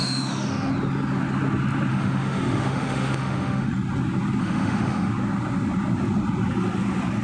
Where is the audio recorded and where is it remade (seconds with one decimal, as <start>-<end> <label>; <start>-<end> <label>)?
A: 0.0-0.7 remade; 0.7-1.9 recorded; 1.9-3.7 remade; 3.7-4.4 recorded; 4.4-5.1 remade; 5.1-7.2 recorded